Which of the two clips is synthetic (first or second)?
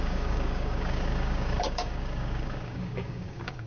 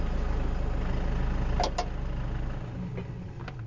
first